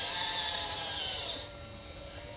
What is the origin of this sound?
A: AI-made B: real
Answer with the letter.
B